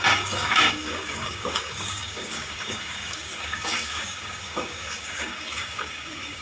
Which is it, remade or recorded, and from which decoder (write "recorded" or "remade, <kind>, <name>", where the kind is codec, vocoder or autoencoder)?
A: remade, codec, DAC